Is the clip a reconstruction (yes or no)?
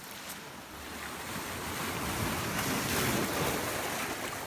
no